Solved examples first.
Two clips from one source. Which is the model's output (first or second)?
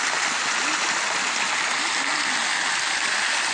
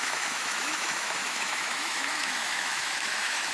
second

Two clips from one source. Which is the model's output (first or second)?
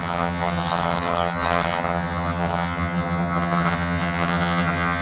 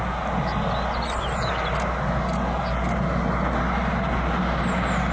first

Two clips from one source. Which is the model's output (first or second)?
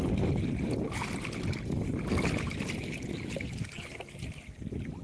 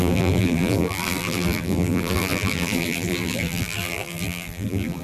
second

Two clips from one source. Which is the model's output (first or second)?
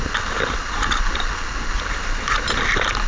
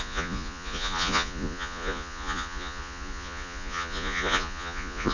second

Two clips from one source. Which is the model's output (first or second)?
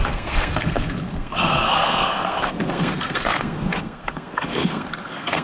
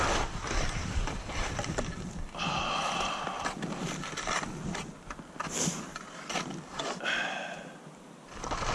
first